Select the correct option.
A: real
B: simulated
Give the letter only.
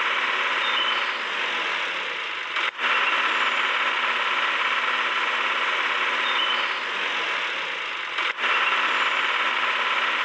A